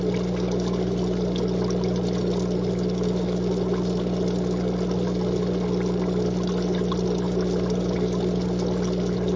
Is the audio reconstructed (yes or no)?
no